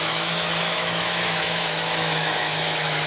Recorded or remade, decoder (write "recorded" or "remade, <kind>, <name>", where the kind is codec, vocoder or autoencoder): remade, autoencoder, DAC-VAE